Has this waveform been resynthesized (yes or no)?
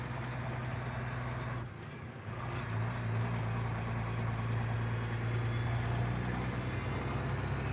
no